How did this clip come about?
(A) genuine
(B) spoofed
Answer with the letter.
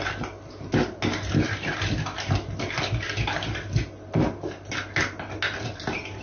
A